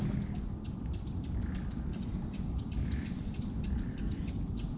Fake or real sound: real